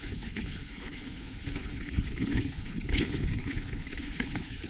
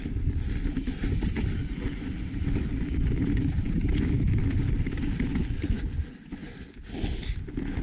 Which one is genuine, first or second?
second